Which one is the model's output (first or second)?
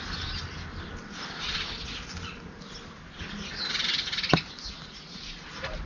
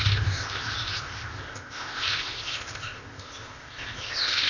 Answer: second